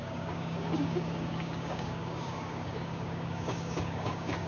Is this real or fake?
fake